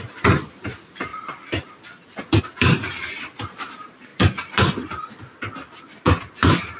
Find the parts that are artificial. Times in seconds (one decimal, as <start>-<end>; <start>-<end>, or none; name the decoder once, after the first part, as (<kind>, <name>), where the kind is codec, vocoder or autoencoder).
0.0-1.1 (vocoder, BigVGAN v2); 2.4-4.1; 6.2-6.8